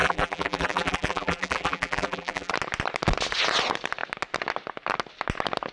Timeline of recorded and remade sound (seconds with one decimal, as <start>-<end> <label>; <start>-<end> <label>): 0.0-2.5 remade; 2.5-5.7 recorded